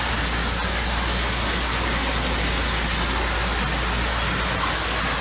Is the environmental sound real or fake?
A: real